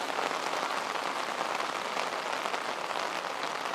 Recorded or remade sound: recorded